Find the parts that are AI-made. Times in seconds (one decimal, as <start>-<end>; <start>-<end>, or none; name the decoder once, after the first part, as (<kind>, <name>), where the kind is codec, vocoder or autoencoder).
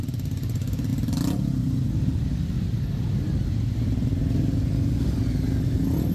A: none